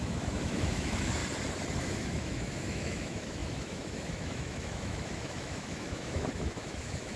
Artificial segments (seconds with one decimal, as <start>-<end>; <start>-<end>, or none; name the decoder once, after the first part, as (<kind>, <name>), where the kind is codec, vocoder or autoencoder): 0.0-1.2 (autoencoder, DAC-VAE); 1.8-7.2